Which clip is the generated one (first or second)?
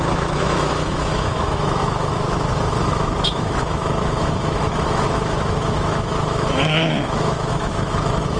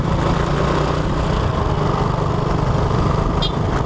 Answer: first